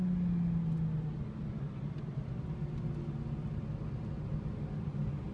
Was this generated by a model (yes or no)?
no